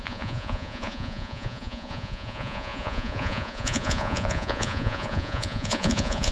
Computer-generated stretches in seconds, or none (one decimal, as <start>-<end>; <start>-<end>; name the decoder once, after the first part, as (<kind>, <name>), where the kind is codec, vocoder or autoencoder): 0.0-6.3 (vocoder, Vocos)